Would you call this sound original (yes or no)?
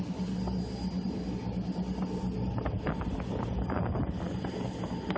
yes